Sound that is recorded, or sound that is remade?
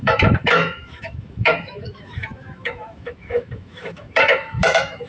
remade